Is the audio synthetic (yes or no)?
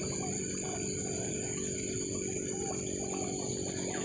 no